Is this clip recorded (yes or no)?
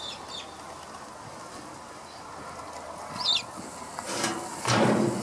yes